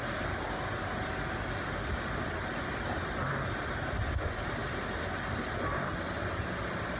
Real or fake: real